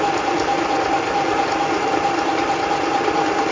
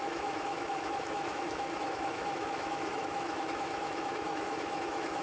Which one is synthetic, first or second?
second